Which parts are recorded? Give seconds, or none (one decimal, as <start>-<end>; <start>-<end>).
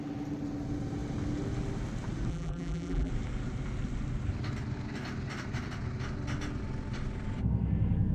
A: 0.0-2.3; 3.1-8.1